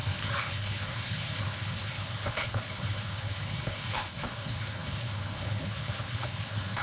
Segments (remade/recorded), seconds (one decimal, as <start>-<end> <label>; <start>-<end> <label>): 0.0-6.8 remade